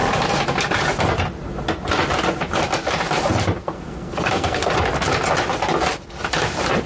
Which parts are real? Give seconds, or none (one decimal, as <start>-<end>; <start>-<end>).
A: 0.0-3.6; 4.7-6.9